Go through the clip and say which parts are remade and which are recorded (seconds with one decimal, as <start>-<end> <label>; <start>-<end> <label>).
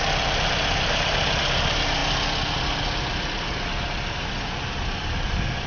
0.0-2.0 remade; 2.0-5.7 recorded